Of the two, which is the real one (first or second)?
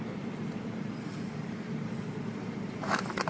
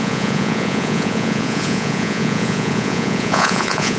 first